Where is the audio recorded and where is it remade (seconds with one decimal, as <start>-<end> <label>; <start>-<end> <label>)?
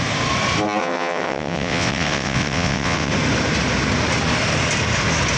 0.0-0.8 recorded; 0.8-3.1 remade; 3.1-5.4 recorded